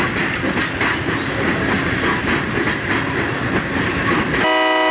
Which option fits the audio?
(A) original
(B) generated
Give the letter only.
A